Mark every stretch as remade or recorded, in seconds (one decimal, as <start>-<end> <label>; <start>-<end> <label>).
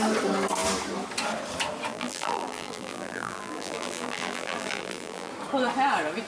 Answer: 0.0-1.9 recorded; 1.9-5.3 remade; 5.3-6.3 recorded